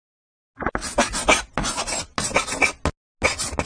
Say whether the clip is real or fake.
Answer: real